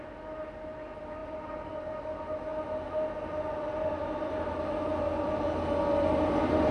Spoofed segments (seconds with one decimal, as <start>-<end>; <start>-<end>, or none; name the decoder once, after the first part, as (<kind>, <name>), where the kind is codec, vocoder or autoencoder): 1.2-1.9 (vocoder, BigVGAN v2); 6.1-6.7